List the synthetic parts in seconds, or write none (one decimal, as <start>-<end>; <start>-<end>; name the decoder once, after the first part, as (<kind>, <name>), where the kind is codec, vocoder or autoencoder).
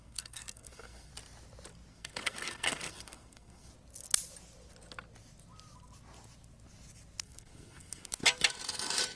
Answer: 0.0-1.1 (codec, SNAC); 1.9-3.7; 7.2-8.2